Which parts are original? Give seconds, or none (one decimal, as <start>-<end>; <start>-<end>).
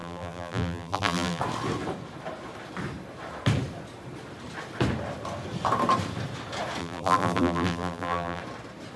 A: 1.4-6.8; 8.4-9.0